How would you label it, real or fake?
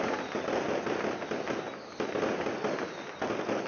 real